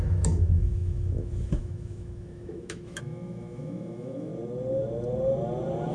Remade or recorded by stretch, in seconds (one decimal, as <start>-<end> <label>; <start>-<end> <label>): 0.0-4.3 remade; 4.3-5.9 recorded